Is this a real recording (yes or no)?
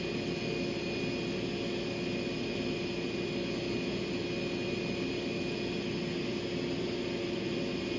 yes